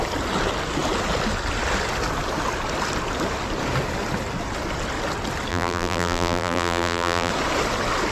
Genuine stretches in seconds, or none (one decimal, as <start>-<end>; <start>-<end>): 0.0-5.5; 7.3-8.1